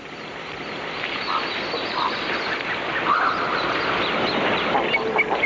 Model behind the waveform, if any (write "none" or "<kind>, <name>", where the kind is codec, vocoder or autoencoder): none